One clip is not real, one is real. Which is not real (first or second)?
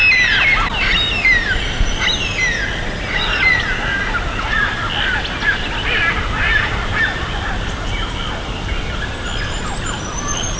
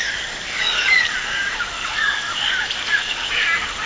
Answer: second